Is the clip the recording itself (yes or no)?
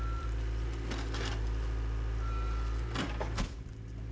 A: no